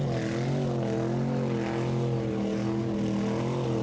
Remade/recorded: recorded